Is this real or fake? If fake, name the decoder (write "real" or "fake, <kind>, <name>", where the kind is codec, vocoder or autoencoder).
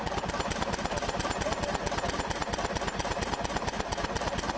real